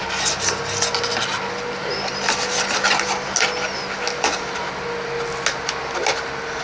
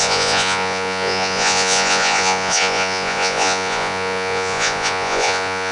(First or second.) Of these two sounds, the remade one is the second